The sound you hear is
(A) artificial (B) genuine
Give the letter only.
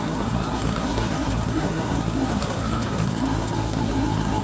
A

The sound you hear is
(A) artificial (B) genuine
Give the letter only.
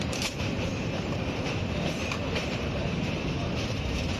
A